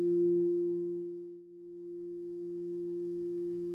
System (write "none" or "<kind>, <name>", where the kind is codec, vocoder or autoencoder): codec, SNAC